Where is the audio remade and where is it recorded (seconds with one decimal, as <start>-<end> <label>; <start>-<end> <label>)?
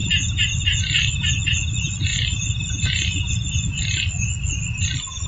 0.0-5.3 recorded